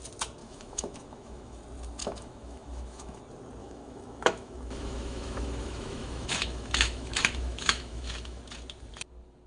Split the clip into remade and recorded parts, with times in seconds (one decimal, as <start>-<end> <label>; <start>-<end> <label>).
0.0-0.4 recorded; 0.4-1.6 remade; 1.6-2.0 recorded; 2.0-3.2 remade; 3.2-3.6 recorded; 3.6-8.4 remade; 8.4-9.5 recorded